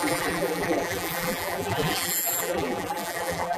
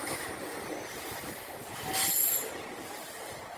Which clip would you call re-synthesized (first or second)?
first